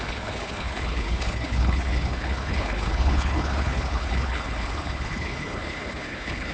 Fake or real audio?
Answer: fake